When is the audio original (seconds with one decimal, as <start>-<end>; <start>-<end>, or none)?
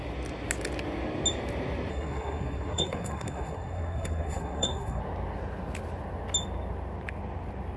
0.0-1.9; 5.0-7.8